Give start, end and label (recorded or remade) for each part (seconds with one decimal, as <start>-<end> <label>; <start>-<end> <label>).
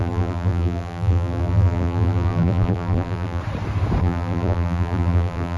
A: 0.0-3.4 remade; 3.4-4.0 recorded; 4.0-5.6 remade